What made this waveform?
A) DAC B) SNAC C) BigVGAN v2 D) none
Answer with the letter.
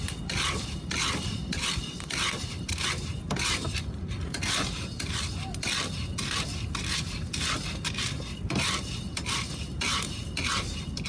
D